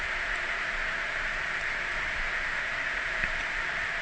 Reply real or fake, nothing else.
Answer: fake